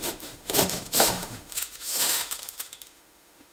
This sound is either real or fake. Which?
fake